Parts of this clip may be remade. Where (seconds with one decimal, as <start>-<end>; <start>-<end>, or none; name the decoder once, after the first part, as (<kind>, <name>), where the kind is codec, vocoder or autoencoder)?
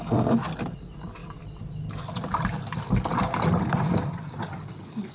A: none